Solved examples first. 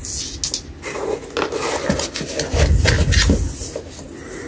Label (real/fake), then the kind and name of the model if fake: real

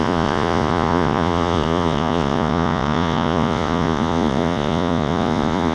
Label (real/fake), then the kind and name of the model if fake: fake, vocoder, Vocos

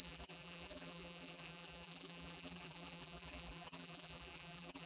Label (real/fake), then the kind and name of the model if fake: fake, vocoder, BigVGAN v2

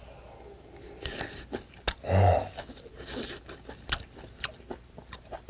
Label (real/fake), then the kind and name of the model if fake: real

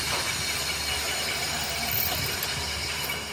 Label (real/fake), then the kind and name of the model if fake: real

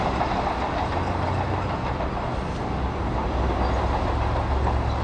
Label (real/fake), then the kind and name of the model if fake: real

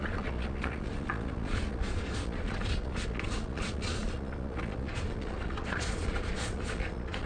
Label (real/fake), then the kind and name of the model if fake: fake, vocoder, Vocos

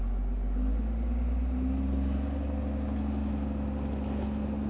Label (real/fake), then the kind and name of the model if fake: real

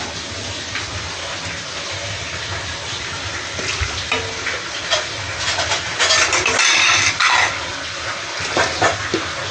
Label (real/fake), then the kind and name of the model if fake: real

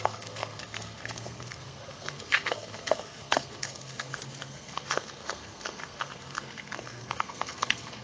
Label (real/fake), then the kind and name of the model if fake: fake, codec, SNAC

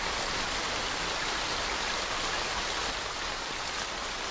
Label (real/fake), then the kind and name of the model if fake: fake, vocoder, BigVGAN v2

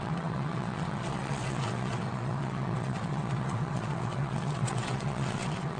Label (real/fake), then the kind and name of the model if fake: fake, vocoder, WaveNeXt